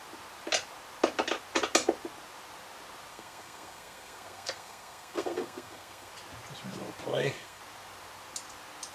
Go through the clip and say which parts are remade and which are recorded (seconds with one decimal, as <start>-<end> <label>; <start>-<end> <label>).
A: 0.0-3.1 recorded; 3.1-6.1 remade; 6.1-7.1 recorded; 7.1-7.6 remade; 7.6-8.9 recorded